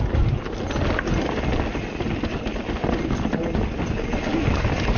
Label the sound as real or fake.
real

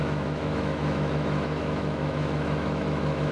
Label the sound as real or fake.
fake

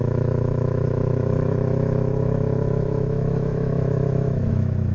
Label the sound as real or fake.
fake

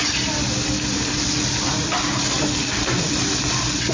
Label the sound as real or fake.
real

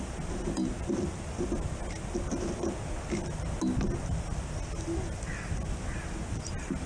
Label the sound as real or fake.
real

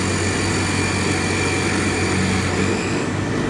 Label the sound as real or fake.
real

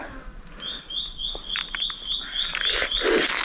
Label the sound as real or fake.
real